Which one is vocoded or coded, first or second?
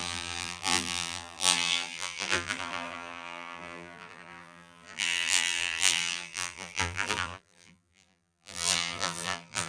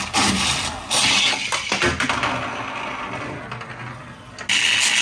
first